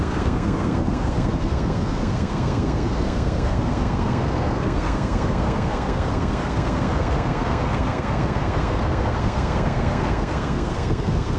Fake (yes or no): yes